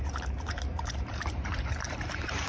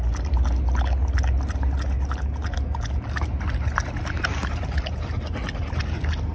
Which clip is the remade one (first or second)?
first